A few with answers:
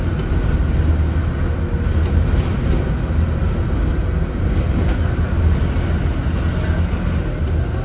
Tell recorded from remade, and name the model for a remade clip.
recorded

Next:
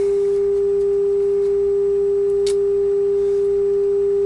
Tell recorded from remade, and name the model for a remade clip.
recorded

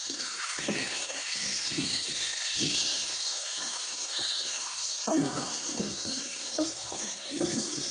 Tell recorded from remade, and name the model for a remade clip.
remade, codec, SNAC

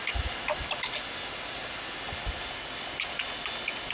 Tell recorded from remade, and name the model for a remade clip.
recorded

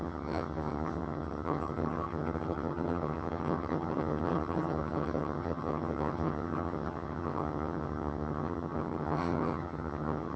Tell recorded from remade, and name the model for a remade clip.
remade, vocoder, HiFi-GAN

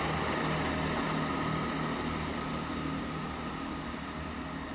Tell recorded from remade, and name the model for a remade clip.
recorded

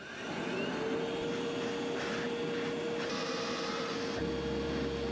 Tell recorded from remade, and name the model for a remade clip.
recorded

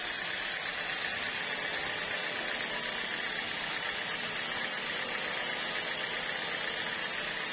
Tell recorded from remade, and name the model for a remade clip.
recorded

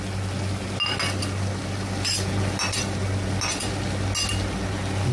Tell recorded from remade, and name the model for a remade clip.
recorded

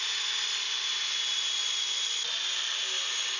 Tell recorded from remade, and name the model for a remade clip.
recorded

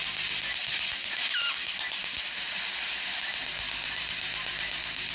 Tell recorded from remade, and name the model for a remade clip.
recorded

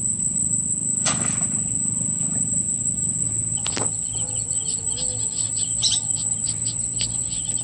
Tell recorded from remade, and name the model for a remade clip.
recorded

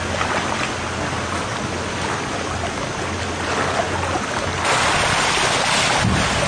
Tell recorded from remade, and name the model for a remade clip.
recorded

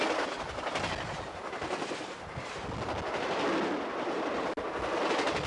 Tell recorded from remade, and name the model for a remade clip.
recorded